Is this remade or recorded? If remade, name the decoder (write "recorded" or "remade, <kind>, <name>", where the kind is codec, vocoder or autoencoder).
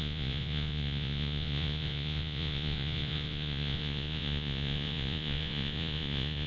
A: remade, vocoder, Vocos